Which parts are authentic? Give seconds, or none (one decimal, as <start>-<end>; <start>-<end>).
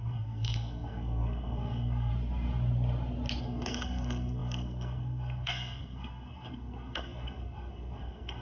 2.1-3.4